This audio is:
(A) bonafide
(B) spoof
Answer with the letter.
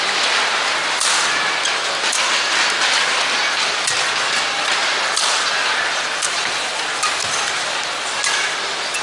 A